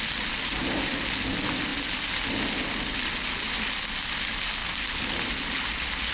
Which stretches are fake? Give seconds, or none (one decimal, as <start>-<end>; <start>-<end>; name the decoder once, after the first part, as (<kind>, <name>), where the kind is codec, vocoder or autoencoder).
none